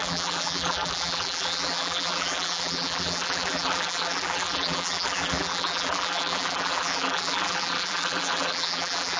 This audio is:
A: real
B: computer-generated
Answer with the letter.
B